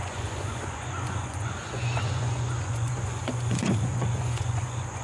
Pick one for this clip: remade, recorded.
remade